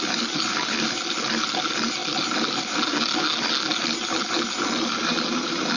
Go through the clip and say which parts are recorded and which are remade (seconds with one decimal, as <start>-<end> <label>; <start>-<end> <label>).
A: 0.0-5.8 recorded